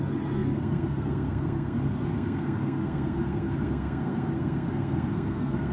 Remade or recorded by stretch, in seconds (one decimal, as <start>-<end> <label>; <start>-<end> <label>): 0.0-5.7 remade